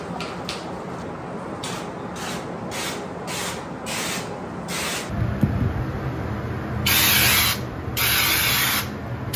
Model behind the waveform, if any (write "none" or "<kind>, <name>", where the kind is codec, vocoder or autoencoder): none